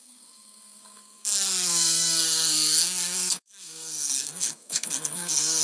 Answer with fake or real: fake